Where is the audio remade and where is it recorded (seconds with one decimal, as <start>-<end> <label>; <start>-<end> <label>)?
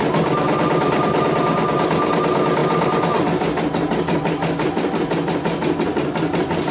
0.0-2.6 recorded; 2.6-6.7 remade